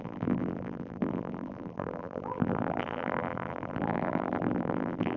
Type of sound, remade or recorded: remade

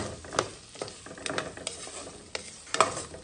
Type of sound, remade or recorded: recorded